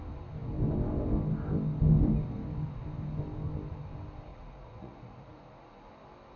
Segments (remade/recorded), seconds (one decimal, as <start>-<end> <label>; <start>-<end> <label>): 0.0-4.3 recorded; 4.3-5.9 remade; 5.9-6.4 recorded